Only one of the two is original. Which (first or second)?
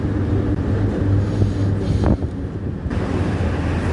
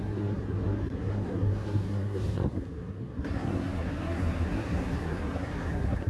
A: first